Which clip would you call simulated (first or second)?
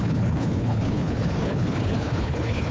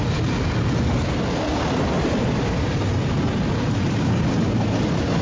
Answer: first